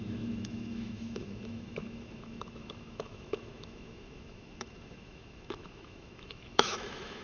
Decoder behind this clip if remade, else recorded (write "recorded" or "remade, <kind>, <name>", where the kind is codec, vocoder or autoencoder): remade, autoencoder, DAC-VAE